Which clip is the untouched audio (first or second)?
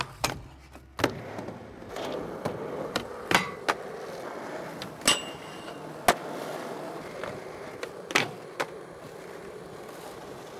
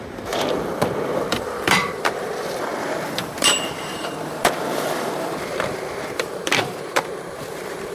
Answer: first